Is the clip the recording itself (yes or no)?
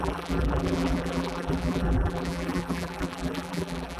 no